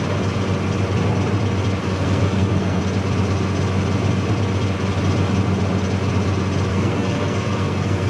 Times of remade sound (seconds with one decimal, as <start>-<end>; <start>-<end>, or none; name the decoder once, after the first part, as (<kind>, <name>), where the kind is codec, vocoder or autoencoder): 1.8-2.8 (codec, SNAC); 6.7-8.1